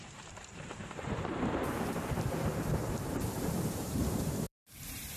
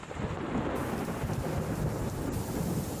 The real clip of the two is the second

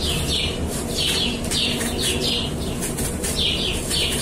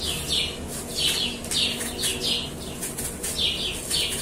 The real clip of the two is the second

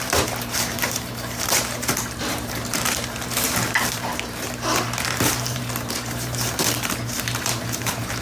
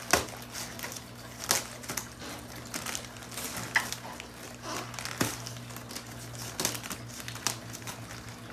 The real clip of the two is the second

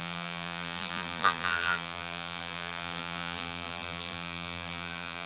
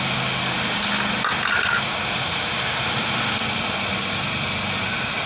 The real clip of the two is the second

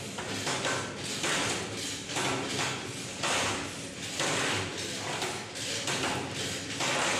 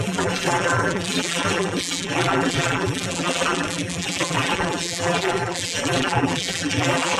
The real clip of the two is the first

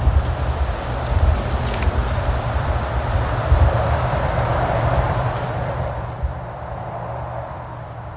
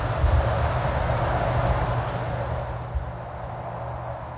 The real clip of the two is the second